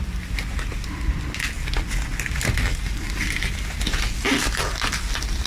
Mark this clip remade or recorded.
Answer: recorded